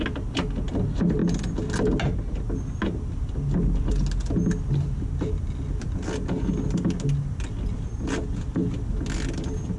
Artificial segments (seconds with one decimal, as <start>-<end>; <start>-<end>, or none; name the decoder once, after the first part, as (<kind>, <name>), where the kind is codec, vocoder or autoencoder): none